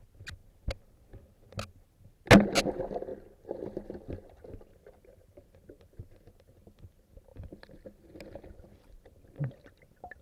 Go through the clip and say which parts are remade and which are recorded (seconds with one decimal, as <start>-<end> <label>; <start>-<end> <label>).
0.0-10.2 recorded